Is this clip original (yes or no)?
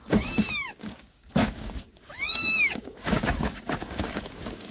no